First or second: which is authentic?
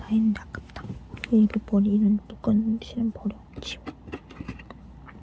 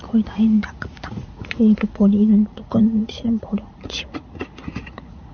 first